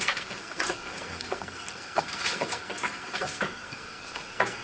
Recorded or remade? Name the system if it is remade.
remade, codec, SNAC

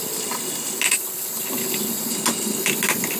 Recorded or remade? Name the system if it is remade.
recorded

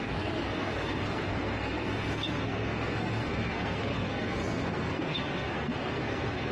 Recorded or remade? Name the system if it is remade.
remade, codec, SNAC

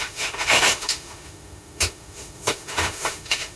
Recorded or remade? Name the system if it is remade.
remade, autoencoder, DAC-VAE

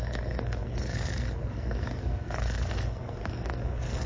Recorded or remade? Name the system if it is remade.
remade, codec, SNAC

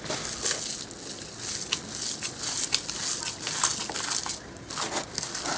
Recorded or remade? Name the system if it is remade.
recorded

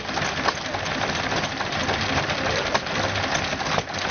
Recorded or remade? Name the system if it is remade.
recorded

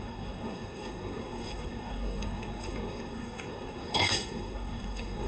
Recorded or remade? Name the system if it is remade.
remade, codec, SNAC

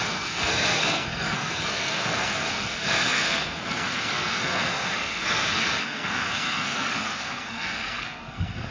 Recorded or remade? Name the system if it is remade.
remade, codec, SNAC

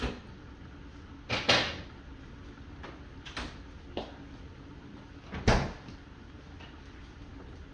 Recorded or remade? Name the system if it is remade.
recorded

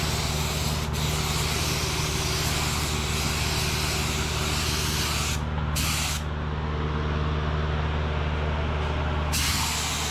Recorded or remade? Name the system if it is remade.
recorded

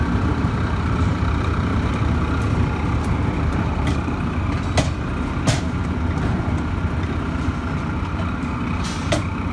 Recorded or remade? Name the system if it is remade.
recorded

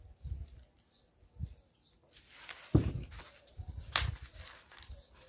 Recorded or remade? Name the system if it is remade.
recorded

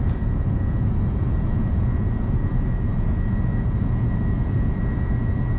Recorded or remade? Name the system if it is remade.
remade, vocoder, Vocos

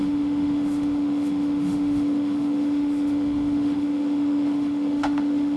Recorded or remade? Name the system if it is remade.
remade, autoencoder, DAC-VAE